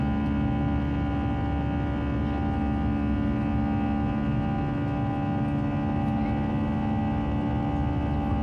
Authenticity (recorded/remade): recorded